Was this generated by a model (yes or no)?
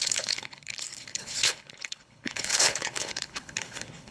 yes